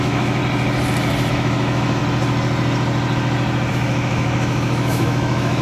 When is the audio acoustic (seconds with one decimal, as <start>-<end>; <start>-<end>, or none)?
0.4-1.3; 2.0-3.7